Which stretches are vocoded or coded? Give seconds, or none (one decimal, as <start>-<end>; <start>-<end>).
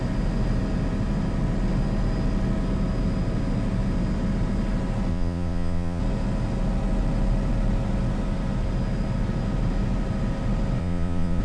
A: 5.1-6.0; 10.8-11.4